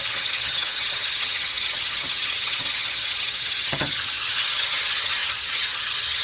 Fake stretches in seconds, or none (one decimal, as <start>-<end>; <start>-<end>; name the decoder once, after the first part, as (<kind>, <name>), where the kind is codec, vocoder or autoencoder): 0.0-6.2 (vocoder, HiFi-GAN)